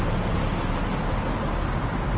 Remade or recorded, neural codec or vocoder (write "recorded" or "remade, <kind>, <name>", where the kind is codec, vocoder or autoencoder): recorded